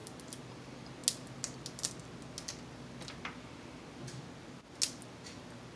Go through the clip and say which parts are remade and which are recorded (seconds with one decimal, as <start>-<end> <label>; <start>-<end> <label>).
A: 0.0-5.8 recorded

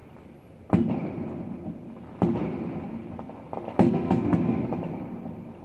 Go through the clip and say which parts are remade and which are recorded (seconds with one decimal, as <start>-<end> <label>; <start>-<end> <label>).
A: 0.0-3.7 recorded; 3.7-4.7 remade; 4.7-5.6 recorded

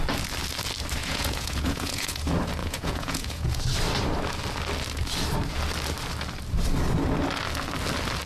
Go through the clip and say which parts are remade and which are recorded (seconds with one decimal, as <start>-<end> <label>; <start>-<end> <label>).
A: 0.0-1.0 recorded; 1.0-2.2 remade; 2.2-2.6 recorded; 2.6-3.6 remade; 3.6-8.3 recorded

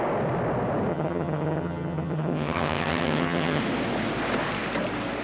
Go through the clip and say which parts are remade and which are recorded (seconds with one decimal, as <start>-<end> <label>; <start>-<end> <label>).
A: 0.0-0.9 recorded; 0.9-3.6 remade; 3.6-5.2 recorded